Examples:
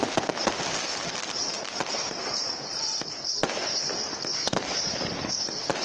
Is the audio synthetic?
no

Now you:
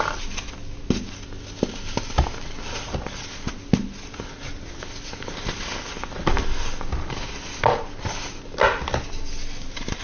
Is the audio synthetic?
no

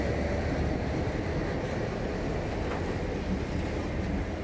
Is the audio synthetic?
no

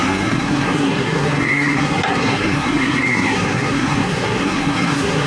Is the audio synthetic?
yes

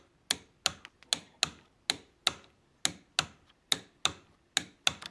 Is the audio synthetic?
no